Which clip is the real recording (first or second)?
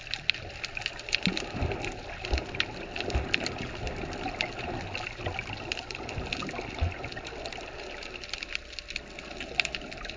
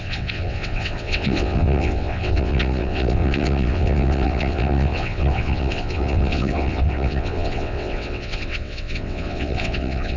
first